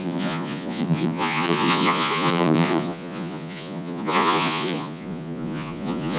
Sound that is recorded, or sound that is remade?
remade